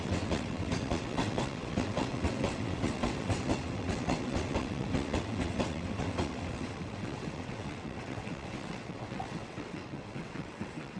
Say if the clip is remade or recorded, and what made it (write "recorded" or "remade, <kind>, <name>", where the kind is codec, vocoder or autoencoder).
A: remade, vocoder, WaveNeXt